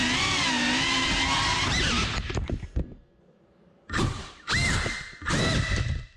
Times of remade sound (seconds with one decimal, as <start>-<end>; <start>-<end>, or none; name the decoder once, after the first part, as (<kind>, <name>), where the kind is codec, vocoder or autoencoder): none